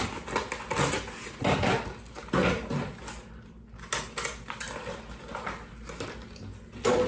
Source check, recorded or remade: recorded